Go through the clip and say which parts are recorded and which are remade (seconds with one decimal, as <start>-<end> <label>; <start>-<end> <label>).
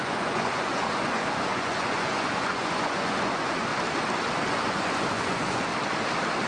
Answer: 0.0-3.7 remade; 3.7-4.5 recorded; 4.5-5.7 remade; 5.7-6.5 recorded